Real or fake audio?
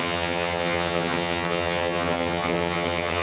fake